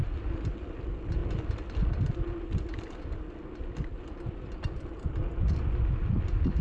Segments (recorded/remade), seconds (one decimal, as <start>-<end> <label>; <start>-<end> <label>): 0.0-6.6 recorded

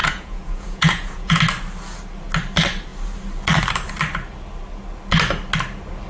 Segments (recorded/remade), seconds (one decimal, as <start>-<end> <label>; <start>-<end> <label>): 0.0-1.4 remade; 1.4-6.1 recorded